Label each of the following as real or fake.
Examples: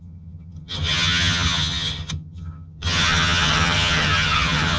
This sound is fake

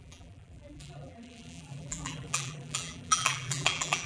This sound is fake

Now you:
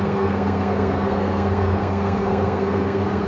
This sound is fake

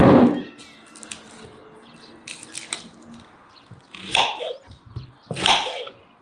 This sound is real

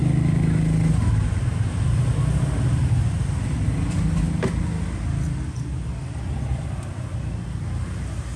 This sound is real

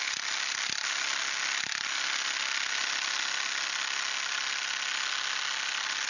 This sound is real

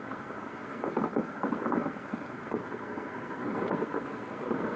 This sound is fake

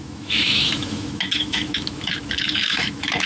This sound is fake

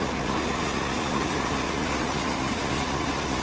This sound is fake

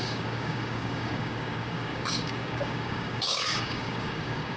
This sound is fake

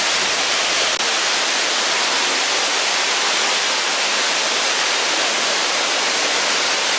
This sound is real